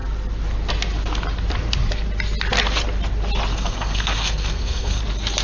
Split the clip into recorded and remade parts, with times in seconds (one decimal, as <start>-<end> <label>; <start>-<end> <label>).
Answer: 0.0-3.5 recorded; 3.5-5.0 remade; 5.0-5.4 recorded